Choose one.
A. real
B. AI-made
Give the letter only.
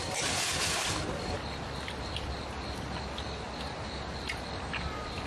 A